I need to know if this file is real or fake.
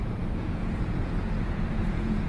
fake